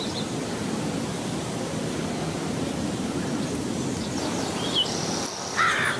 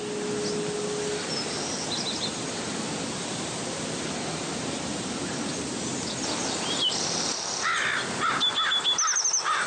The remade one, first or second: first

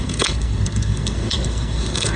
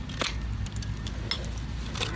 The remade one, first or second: first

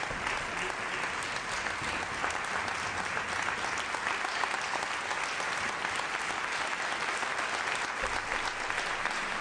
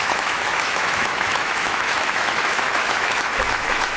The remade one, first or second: second